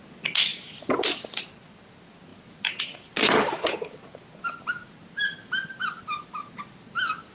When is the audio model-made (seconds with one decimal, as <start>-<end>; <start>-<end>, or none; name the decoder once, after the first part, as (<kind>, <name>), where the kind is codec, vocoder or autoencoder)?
none